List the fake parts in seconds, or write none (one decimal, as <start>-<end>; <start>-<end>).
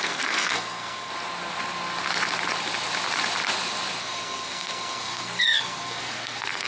0.0-1.1; 4.0-6.7